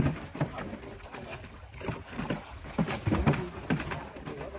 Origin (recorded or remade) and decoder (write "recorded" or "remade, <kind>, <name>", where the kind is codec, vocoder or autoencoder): recorded